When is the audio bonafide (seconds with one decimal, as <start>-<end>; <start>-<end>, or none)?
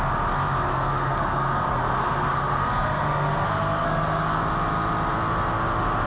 0.0-0.7; 4.4-6.1